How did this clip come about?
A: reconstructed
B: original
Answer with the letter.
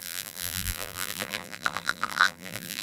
A